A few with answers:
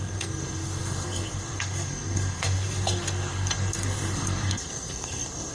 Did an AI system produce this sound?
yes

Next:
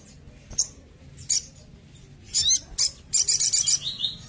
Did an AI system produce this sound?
no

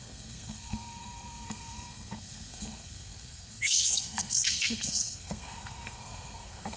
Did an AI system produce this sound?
yes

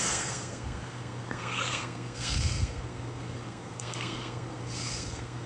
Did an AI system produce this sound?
yes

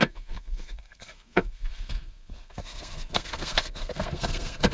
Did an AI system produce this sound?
yes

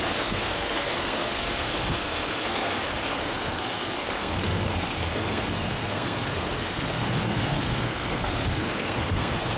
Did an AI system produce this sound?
yes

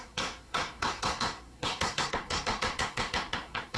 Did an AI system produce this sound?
yes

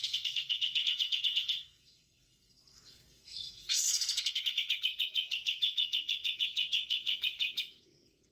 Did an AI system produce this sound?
yes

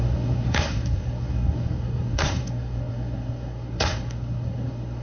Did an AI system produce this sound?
yes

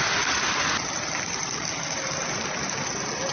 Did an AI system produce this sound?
no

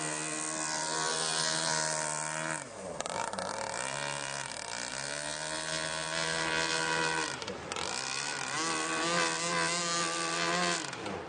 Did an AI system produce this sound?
no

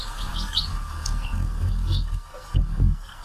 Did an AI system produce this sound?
yes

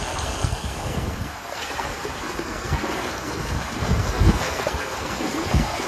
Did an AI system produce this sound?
yes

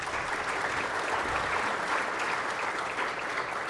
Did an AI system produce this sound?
no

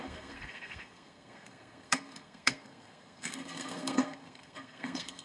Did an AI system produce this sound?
yes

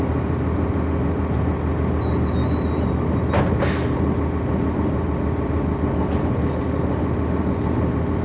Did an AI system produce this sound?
no